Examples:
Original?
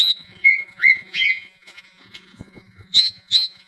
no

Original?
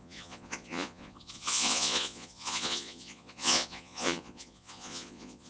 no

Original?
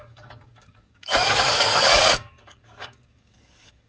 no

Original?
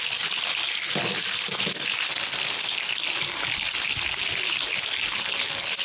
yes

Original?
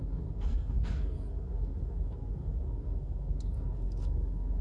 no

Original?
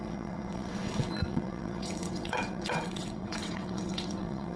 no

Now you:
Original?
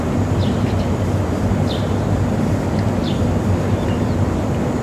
yes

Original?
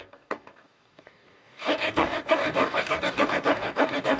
no